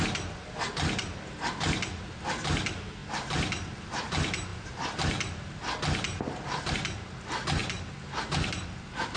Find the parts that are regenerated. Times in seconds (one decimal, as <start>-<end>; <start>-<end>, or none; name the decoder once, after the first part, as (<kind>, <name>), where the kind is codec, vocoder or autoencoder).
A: 0.0-7.6 (vocoder, BigVGAN v2); 8.5-9.2